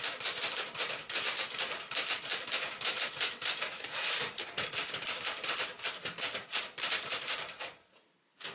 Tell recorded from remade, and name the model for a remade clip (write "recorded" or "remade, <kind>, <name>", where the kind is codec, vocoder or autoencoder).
remade, vocoder, BigVGAN v2